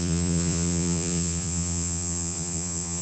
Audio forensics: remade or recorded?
remade